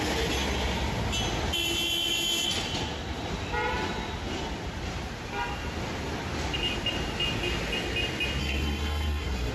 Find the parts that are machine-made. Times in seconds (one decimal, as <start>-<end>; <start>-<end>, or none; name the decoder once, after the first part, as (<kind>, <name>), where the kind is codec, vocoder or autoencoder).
8.4-9.5 (codec, SNAC)